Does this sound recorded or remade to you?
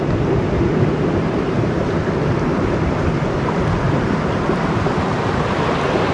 recorded